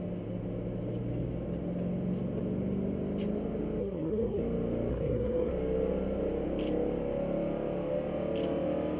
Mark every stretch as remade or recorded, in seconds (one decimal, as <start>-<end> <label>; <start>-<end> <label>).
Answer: 0.0-3.8 recorded; 3.8-4.4 remade; 4.4-4.9 recorded; 4.9-5.5 remade; 5.5-9.0 recorded